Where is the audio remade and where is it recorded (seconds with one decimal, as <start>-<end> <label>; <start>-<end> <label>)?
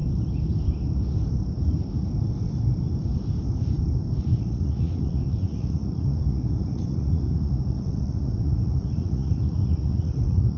0.0-4.2 recorded; 4.2-10.6 remade